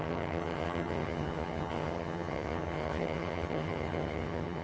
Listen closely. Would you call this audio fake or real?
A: fake